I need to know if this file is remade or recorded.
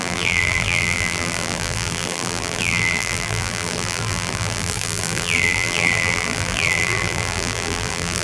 remade